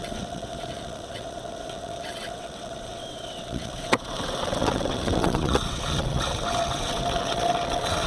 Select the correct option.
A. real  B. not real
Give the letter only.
B